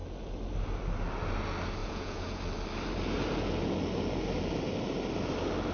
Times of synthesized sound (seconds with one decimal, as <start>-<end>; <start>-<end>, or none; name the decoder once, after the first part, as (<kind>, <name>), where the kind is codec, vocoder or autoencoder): 1.8-2.4 (vocoder, Vocos)